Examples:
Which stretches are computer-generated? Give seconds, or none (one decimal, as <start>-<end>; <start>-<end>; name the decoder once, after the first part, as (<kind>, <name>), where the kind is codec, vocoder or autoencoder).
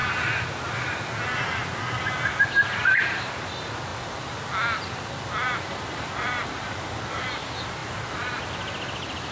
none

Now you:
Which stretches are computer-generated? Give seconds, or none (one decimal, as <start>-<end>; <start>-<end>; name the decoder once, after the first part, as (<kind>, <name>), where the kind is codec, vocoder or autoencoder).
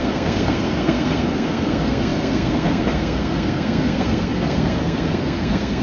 0.0-5.8 (codec, SNAC)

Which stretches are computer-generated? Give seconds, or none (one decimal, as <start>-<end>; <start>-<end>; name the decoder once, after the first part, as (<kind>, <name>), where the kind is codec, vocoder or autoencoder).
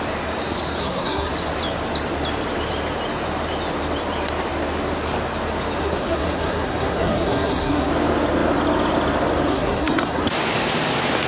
0.8-1.3 (codec, SNAC); 5.8-7.9; 9.5-10.2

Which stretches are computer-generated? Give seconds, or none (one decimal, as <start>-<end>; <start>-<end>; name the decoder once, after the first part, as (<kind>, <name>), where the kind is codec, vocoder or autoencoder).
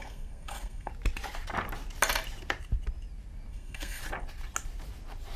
0.0-0.9 (codec, SNAC); 3.5-4.0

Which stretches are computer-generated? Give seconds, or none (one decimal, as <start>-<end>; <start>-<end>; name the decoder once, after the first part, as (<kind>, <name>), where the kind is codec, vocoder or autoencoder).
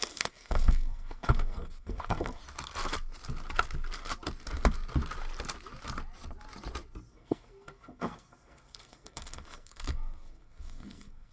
0.0-2.4 (codec, SNAC); 7.1-11.3